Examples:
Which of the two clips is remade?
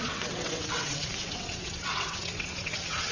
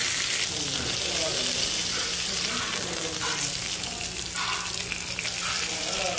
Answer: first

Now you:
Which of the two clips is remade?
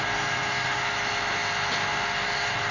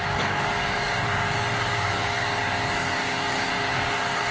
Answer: second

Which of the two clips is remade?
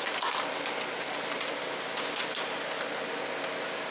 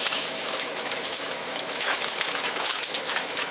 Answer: second